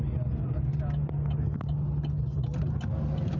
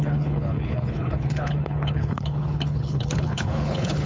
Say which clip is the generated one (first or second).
second